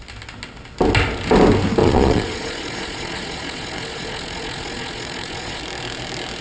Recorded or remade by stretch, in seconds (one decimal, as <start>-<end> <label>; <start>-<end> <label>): 0.0-1.8 recorded; 1.8-5.6 remade; 5.6-6.4 recorded